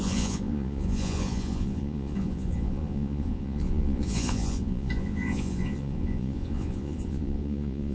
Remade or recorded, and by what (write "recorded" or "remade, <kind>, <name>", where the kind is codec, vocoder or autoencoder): remade, vocoder, Vocos